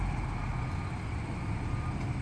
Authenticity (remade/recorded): recorded